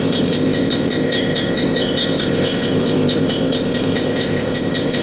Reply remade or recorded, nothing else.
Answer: remade